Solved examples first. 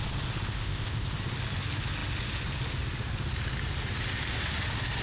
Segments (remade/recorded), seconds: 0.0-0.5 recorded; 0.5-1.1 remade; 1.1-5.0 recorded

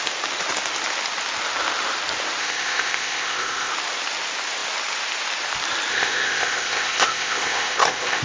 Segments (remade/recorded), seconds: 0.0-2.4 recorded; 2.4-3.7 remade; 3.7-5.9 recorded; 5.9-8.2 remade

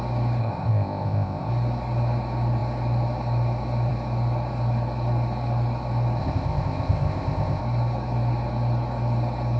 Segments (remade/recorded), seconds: 0.0-0.4 recorded; 0.4-1.5 remade; 1.5-6.2 recorded; 6.2-7.6 remade; 7.6-9.6 recorded